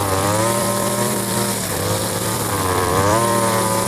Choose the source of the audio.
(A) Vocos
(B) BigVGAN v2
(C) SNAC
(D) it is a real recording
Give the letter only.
B